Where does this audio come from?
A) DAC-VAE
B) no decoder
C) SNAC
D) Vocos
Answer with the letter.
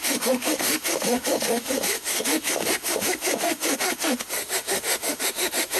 A